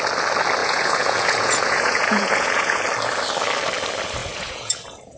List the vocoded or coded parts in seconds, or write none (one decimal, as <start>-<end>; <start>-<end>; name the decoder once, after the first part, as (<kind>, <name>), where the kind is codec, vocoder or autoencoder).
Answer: 0.6-2.8 (vocoder, Vocos); 4.2-5.2

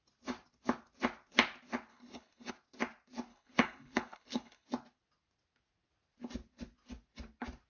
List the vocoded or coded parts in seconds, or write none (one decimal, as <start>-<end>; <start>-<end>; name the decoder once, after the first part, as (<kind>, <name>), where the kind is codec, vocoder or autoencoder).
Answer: 1.9-2.5 (codec, HILCodec); 3.3-4.7

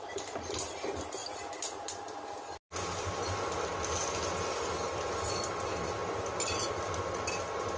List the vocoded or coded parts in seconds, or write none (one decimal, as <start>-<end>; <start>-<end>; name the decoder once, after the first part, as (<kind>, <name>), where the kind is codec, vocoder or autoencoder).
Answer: none

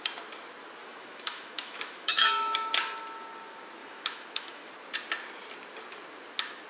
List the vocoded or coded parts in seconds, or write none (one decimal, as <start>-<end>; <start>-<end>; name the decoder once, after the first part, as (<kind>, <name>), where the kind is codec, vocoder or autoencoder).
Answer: 0.8-2.7 (autoencoder, DAC-VAE); 3.8-4.7

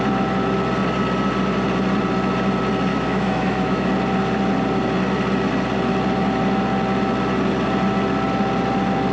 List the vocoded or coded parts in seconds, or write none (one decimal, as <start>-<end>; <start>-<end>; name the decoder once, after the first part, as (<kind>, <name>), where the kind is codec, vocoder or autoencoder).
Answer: 2.9-3.9 (autoencoder, DAC-VAE)

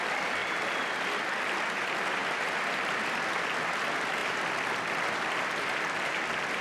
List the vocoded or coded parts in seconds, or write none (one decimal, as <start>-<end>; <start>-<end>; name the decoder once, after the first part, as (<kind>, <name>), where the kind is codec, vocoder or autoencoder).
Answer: 0.4-1.4 (vocoder, BigVGAN v2); 4.2-4.7